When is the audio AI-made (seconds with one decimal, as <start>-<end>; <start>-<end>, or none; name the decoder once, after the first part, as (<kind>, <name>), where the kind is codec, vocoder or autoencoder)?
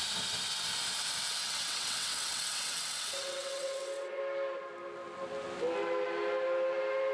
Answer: 1.4-4.2 (vocoder, WaveNeXt)